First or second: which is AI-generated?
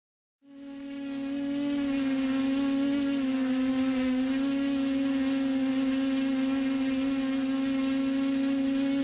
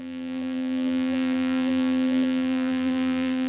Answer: second